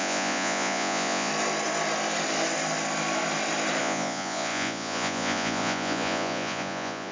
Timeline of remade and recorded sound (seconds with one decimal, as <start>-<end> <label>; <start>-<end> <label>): 0.0-1.3 remade; 1.3-3.8 recorded; 3.8-7.1 remade